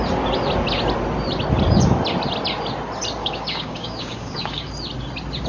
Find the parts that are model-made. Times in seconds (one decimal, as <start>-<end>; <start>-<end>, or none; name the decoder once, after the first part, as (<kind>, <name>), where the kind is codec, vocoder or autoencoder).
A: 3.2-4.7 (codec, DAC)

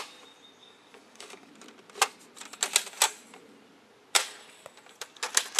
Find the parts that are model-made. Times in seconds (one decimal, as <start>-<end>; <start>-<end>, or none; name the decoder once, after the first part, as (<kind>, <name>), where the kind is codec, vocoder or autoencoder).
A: 0.6-1.5 (codec, DAC)

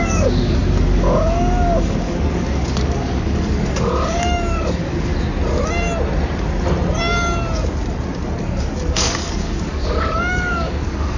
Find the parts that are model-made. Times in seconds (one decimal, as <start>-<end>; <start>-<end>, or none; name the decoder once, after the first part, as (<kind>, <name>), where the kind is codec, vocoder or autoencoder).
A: 0.0-5.1 (codec, DAC); 8.4-11.2